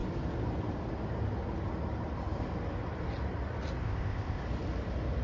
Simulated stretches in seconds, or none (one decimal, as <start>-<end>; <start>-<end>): 3.8-4.4